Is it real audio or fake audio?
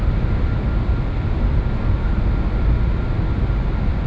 real